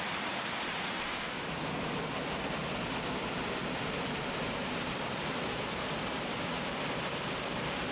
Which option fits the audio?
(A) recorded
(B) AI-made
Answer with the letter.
B